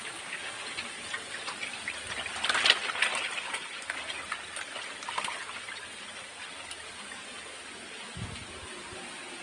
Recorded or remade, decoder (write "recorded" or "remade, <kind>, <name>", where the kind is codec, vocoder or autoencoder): recorded